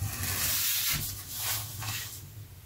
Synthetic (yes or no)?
no